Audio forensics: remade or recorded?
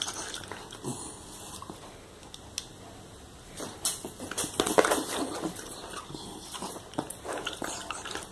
recorded